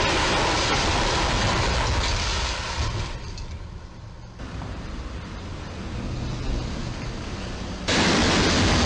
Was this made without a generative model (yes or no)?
yes